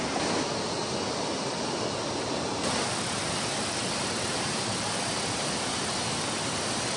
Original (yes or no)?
yes